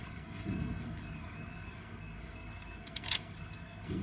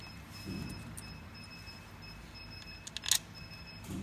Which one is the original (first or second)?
second